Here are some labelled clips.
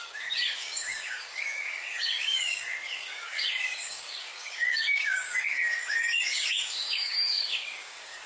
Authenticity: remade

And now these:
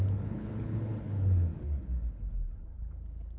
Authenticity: remade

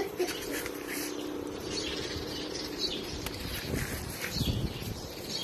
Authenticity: remade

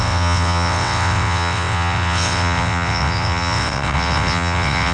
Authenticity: remade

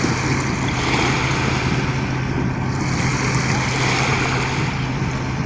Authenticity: recorded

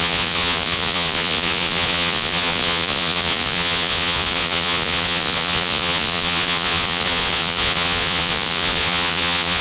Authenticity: remade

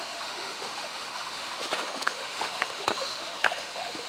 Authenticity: remade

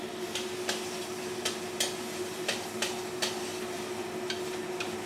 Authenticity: recorded